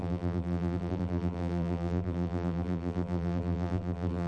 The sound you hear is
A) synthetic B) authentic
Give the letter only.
A